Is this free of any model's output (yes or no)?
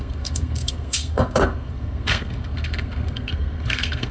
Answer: no